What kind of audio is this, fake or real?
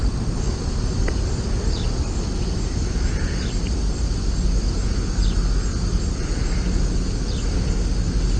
real